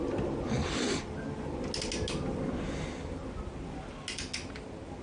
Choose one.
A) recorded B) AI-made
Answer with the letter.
A